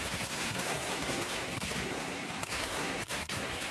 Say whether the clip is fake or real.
fake